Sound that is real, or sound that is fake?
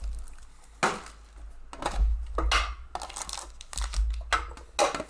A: real